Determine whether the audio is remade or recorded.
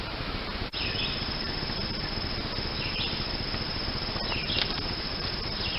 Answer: recorded